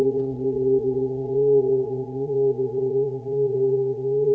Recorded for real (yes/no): no